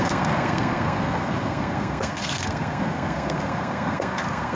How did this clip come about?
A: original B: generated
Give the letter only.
B